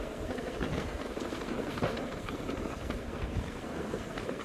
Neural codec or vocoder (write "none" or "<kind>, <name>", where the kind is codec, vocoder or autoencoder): codec, SNAC